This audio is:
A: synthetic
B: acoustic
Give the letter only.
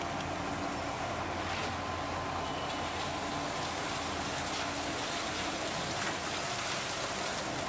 B